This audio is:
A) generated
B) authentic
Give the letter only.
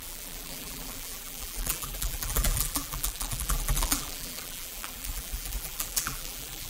A